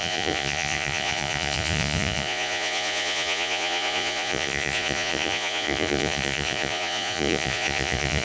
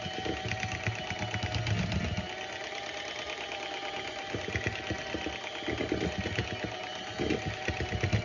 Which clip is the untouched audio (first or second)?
second